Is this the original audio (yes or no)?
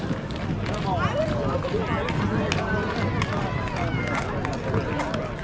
yes